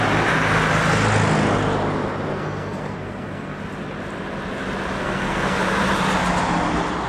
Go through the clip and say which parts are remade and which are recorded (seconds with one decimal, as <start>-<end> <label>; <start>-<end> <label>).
0.0-2.3 recorded; 2.3-3.6 remade; 3.6-5.0 recorded; 5.0-5.6 remade; 5.6-7.1 recorded